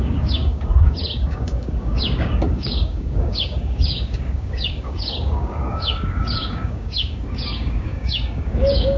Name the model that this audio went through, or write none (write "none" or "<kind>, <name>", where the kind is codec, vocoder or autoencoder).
codec, DAC